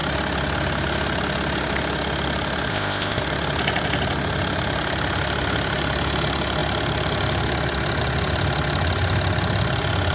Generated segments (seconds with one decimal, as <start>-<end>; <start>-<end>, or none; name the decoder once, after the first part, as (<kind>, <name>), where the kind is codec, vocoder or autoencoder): 2.7-3.2 (codec, ZipCodec)